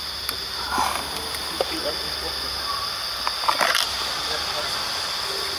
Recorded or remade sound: recorded